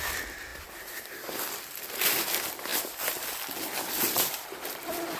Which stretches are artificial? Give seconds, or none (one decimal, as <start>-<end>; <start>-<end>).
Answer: 0.0-5.2